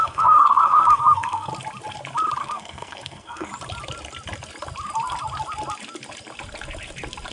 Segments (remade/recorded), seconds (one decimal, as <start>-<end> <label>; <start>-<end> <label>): 0.0-1.5 remade; 1.5-2.4 recorded; 2.4-3.5 remade; 3.5-7.3 recorded